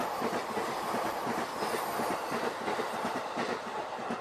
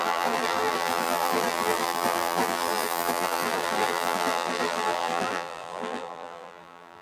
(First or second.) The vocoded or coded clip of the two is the second